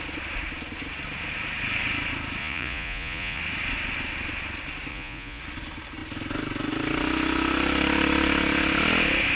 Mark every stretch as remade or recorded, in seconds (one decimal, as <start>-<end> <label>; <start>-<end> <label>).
0.0-2.4 recorded; 2.4-3.4 remade; 3.4-4.9 recorded; 4.9-5.4 remade; 5.4-9.4 recorded